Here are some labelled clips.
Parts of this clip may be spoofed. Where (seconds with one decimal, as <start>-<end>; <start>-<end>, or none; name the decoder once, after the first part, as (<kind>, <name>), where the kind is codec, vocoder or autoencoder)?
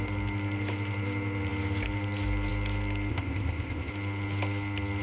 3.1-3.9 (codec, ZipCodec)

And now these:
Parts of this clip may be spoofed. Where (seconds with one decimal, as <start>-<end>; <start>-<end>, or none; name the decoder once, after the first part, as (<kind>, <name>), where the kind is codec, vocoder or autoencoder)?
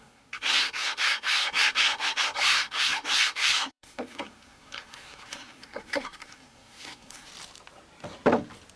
0.0-7.3 (codec, SNAC)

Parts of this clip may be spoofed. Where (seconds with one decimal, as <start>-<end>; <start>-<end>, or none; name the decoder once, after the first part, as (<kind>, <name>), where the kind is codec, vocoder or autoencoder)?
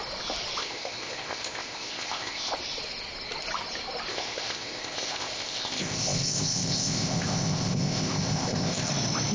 0.6-2.5 (codec, ZipCodec); 4.1-8.9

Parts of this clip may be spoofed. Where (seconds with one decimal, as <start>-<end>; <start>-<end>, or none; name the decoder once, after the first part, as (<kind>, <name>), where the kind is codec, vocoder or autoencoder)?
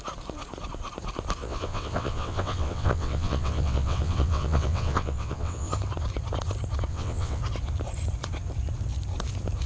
1.4-5.7 (vocoder, WaveNeXt); 6.9-7.4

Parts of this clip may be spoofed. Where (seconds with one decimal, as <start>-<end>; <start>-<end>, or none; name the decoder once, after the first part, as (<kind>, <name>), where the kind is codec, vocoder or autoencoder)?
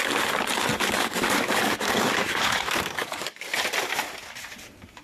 0.7-3.6 (codec, DAC)